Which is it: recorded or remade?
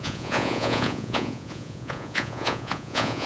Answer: remade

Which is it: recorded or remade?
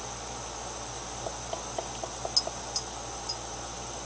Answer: recorded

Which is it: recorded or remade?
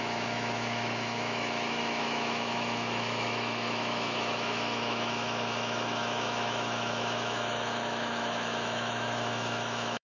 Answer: remade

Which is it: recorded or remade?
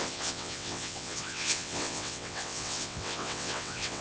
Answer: remade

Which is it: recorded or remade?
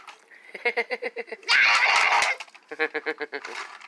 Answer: recorded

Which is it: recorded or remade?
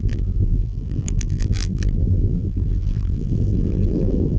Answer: remade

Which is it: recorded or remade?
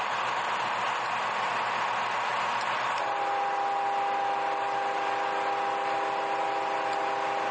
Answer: recorded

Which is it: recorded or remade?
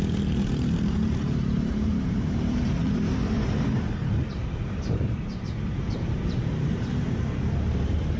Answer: remade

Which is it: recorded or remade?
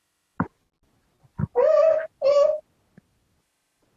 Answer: recorded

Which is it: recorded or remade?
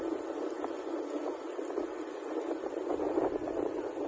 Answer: recorded